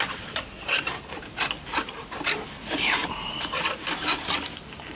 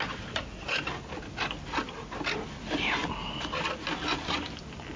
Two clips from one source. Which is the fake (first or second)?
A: first